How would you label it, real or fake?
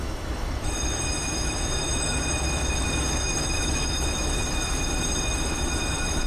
fake